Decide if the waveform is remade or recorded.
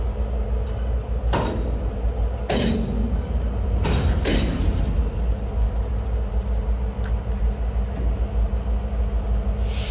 recorded